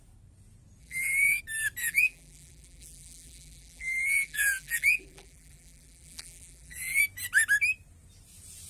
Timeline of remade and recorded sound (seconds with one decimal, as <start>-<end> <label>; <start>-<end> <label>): 0.0-0.8 recorded; 0.8-1.4 remade; 1.4-1.8 recorded; 1.8-7.0 remade; 7.0-8.7 recorded